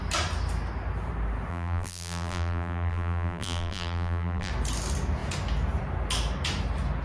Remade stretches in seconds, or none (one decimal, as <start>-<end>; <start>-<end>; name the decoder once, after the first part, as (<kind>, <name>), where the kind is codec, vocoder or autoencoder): 1.5-4.5 (vocoder, BigVGAN v2)